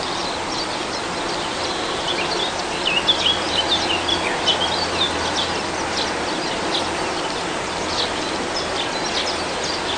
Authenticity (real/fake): real